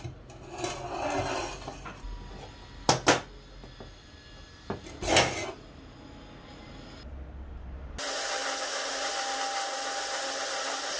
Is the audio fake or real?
real